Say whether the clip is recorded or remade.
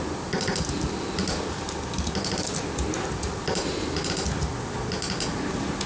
recorded